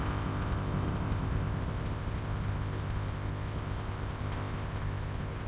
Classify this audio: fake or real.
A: fake